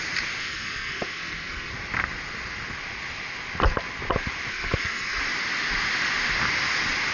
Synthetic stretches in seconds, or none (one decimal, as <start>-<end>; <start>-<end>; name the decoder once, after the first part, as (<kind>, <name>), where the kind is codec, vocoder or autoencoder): 0.4-1.7 (codec, SNAC); 4.5-5.2

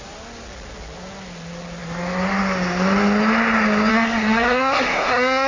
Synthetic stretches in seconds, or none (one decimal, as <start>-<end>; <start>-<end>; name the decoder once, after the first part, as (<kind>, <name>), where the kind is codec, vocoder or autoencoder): 3.9-5.5 (codec, SNAC)